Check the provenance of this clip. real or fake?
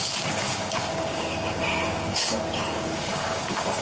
fake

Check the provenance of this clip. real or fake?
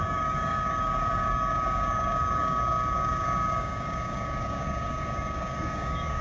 fake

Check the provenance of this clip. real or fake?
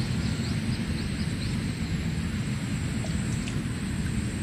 real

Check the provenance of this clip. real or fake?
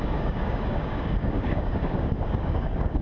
fake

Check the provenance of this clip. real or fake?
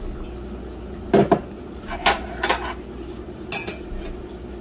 real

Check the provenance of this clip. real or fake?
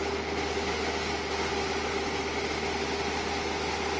real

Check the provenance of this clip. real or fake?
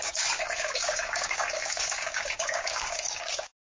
fake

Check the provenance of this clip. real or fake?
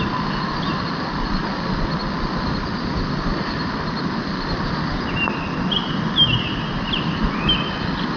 real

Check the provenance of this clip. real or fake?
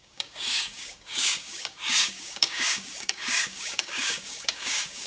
fake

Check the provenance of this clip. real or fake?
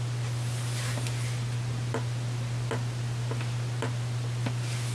real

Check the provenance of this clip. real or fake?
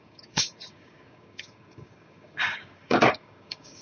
fake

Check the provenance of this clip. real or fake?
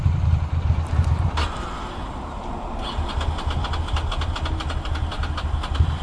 real